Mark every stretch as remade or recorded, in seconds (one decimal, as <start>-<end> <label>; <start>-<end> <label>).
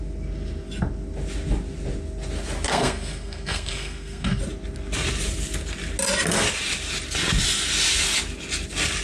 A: 0.0-2.7 recorded; 2.7-4.4 remade; 4.4-9.0 recorded